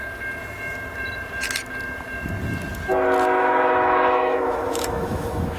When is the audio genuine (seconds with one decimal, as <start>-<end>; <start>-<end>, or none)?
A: 0.0-3.4